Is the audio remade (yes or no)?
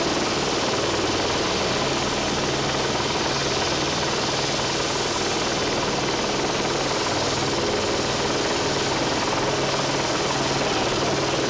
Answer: no